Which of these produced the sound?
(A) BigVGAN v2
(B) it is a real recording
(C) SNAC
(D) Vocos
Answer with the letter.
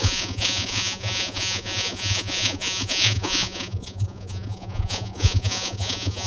D